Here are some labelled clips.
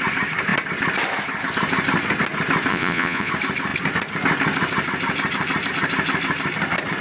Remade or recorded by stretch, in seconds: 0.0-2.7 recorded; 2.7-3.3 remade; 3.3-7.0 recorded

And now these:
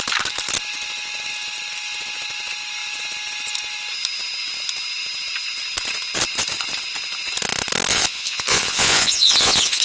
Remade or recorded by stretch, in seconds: 0.0-7.9 recorded; 7.9-9.8 remade

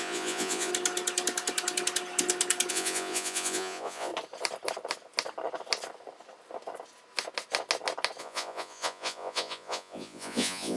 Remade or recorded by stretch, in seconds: 0.0-0.7 remade; 0.7-2.7 recorded; 2.7-4.1 remade; 4.1-8.2 recorded; 8.2-10.8 remade

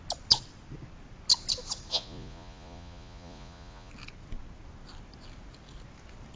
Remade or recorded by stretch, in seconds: 0.0-1.9 recorded; 1.9-3.9 remade; 3.9-6.4 recorded

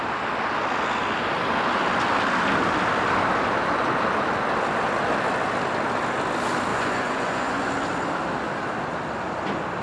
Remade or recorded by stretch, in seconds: 0.0-6.7 recorded; 6.7-7.7 remade; 7.7-9.8 recorded